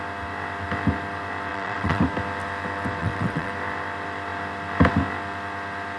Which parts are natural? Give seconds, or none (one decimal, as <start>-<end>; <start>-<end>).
0.0-1.5; 2.0-3.0; 3.5-6.0